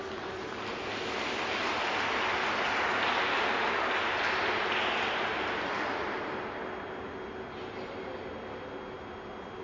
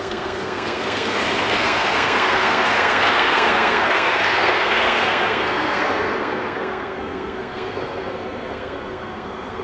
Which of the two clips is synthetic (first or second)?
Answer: second